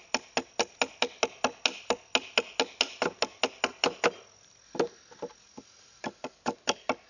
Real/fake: real